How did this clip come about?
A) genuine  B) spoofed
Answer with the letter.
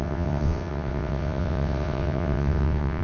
B